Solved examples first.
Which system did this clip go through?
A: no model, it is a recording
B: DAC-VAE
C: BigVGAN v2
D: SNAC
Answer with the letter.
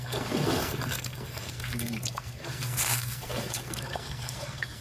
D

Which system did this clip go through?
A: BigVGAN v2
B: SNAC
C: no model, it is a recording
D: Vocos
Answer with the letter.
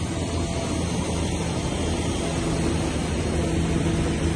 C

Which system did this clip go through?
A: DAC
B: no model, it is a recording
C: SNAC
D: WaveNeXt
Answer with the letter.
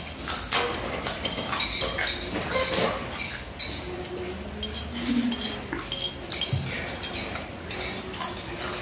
B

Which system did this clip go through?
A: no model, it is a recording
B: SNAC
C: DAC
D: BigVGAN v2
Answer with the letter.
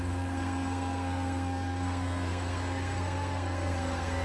B